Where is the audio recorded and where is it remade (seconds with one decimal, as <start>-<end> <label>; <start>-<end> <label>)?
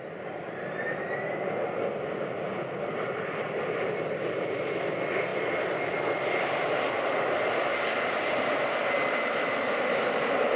0.0-10.6 recorded